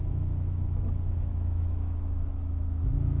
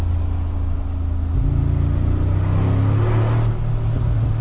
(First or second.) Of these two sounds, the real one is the second